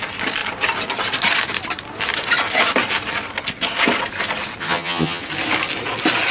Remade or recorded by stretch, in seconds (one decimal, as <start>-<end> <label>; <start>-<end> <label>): 0.0-4.6 recorded; 4.6-5.2 remade; 5.2-6.3 recorded